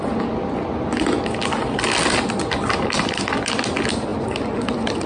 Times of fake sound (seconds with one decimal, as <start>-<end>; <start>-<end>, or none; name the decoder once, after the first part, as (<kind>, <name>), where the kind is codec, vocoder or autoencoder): none